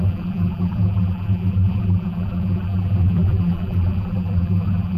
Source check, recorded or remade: remade